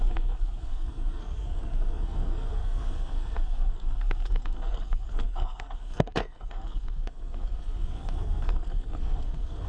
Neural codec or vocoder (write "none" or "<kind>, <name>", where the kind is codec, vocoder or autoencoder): codec, SNAC